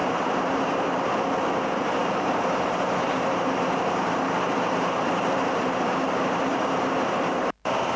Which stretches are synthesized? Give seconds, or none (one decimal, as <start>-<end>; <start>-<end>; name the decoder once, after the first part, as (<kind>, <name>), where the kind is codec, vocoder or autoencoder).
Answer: 0.0-8.0 (vocoder, BigVGAN v2)